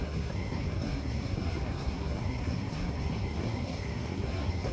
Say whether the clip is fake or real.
fake